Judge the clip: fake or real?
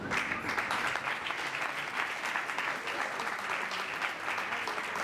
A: real